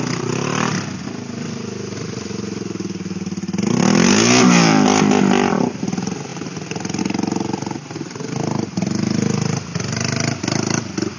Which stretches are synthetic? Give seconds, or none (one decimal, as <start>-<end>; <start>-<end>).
none